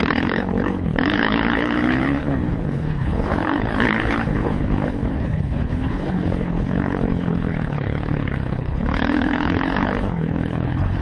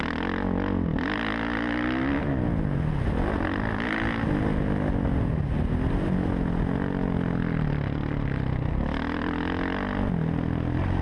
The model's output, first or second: first